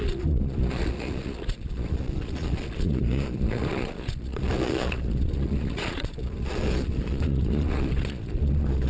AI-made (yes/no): yes